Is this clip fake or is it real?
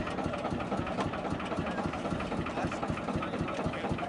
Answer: real